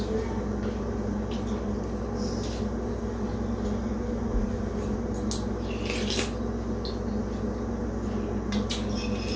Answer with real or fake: real